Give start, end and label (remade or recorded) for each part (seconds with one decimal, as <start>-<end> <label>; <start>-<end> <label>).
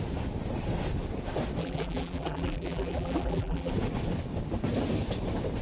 0.0-1.6 recorded; 1.6-3.7 remade; 3.7-5.6 recorded